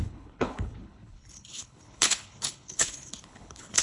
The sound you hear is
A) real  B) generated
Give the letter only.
B